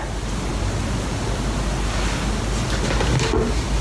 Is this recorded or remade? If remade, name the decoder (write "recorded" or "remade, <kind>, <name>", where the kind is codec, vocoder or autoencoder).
recorded